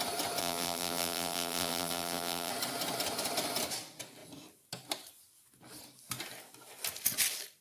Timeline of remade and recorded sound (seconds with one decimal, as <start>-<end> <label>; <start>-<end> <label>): 0.0-0.4 recorded; 0.4-2.5 remade; 2.5-7.6 recorded